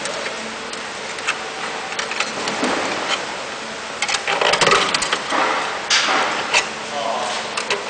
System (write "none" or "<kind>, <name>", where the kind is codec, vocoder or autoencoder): none